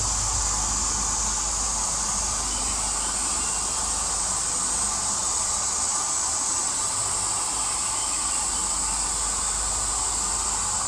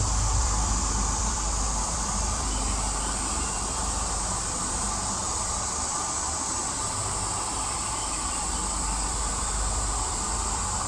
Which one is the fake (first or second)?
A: second